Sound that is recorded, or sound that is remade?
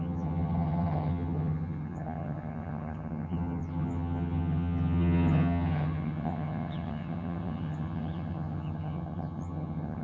remade